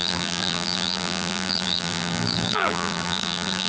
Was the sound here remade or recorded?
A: remade